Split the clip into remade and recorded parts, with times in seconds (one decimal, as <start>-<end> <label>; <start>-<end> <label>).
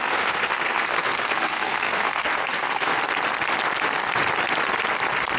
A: 0.0-2.9 remade; 2.9-5.4 recorded